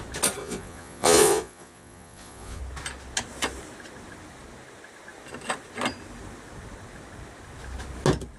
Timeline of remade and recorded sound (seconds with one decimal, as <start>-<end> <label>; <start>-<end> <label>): 0.0-0.4 recorded; 0.4-2.6 remade; 2.6-8.4 recorded